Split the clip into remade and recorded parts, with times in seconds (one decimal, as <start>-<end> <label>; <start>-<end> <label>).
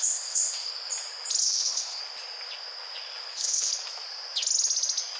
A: 0.0-0.7 remade; 0.7-1.4 recorded; 1.4-2.0 remade; 2.0-3.3 recorded; 3.3-3.7 remade; 3.7-5.2 recorded